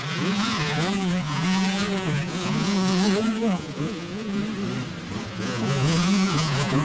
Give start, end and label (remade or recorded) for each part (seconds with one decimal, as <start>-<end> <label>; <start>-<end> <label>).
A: 0.0-4.4 remade; 4.4-5.2 recorded; 5.2-6.8 remade